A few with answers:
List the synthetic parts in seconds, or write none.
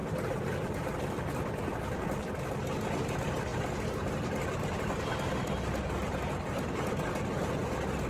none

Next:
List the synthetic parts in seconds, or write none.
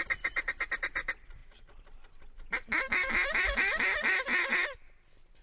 0.0-5.4 (vocoder, BigVGAN v2)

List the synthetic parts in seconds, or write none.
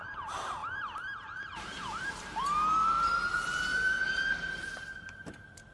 0.0-5.7 (vocoder, BigVGAN v2)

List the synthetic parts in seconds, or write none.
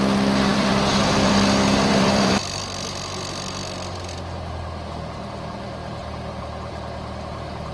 0.5-2.6 (vocoder, BigVGAN v2)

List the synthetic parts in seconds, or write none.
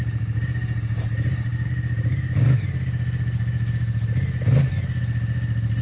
none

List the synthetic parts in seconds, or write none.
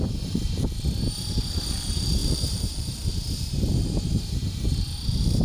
2.2-5.4 (vocoder, BigVGAN v2)